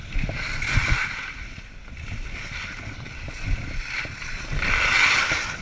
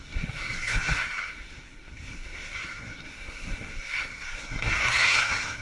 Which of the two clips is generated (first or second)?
second